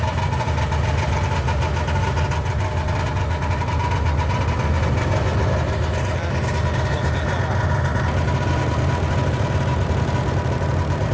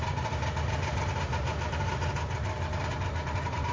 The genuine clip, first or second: first